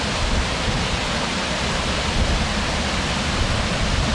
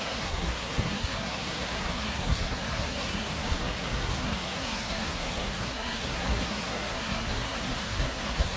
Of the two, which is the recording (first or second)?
first